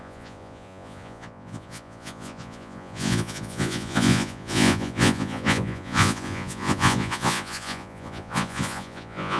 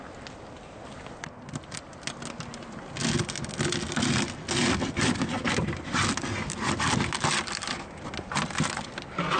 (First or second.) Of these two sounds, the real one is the second